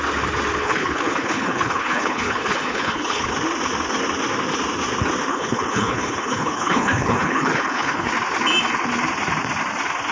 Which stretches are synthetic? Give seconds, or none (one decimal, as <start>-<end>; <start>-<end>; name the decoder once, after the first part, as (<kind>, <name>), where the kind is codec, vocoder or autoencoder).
0.6-3.3 (codec, HILCodec); 5.3-8.1